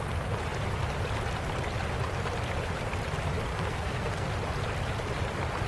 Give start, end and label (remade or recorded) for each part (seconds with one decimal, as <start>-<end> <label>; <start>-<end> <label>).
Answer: 0.0-3.5 recorded; 3.5-4.3 remade; 4.3-5.7 recorded